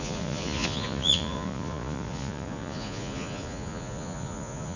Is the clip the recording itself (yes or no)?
no